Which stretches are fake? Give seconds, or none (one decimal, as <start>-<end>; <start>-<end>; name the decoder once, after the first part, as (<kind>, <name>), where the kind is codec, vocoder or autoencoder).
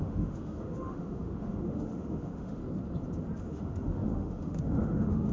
0.0-2.6 (autoencoder, DAC-VAE); 3.4-5.3